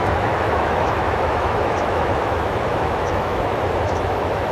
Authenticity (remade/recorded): remade